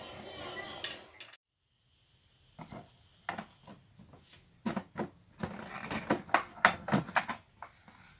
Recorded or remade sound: recorded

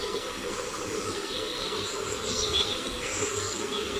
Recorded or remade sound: remade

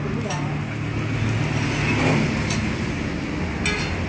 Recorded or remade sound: recorded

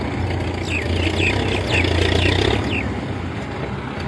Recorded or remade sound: recorded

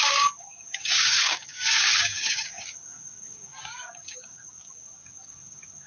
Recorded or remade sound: remade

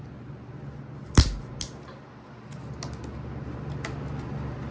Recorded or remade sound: recorded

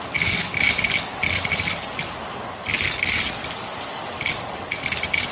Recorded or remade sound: recorded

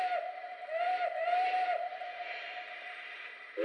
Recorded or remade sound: remade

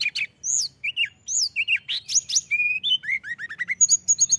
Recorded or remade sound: recorded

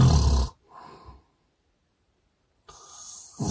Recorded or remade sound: recorded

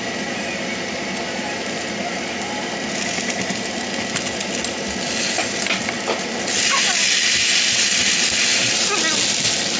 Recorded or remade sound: recorded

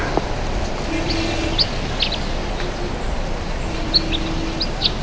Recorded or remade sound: recorded